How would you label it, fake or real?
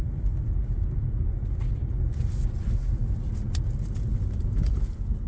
real